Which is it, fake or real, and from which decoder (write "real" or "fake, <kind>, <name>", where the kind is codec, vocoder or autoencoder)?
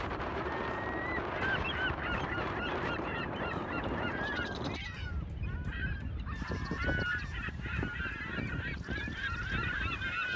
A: fake, vocoder, BigVGAN v2